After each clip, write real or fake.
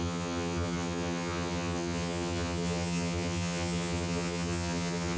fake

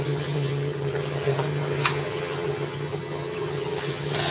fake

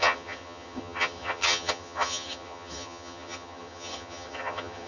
fake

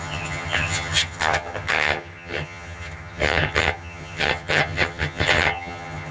fake